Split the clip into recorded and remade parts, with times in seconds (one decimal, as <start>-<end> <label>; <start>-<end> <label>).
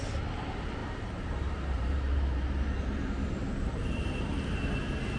0.0-0.8 recorded; 0.8-2.1 remade; 2.1-3.4 recorded; 3.4-4.4 remade; 4.4-5.2 recorded